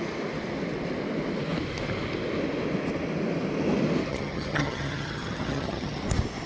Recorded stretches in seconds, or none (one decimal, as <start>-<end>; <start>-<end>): 0.0-4.1; 6.0-6.5